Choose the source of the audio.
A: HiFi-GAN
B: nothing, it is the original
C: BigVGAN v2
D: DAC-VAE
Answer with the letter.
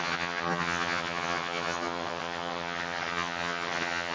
A